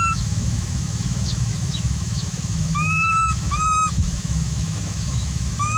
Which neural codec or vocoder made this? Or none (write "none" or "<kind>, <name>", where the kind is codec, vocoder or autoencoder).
autoencoder, DAC-VAE